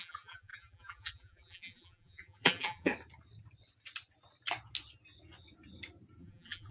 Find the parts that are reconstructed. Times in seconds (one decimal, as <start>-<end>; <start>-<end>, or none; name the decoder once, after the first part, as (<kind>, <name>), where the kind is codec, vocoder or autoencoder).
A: 0.0-2.9 (vocoder, BigVGAN v2); 6.2-6.7